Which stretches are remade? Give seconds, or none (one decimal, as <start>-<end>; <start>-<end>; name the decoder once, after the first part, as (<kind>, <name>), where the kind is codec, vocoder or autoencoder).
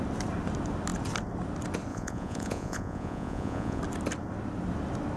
1.9-3.8 (vocoder, Vocos)